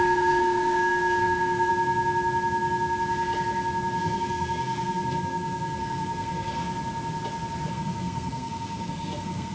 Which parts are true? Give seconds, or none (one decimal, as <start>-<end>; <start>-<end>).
1.7-4.0; 6.6-7.7